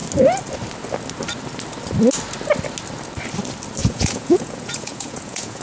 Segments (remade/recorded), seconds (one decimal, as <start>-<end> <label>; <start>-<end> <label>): 0.0-3.8 recorded; 3.8-5.6 remade